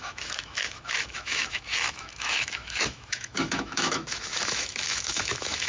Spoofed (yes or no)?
yes